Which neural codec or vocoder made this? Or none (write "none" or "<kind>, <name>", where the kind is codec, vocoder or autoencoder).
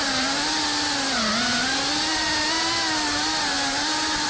none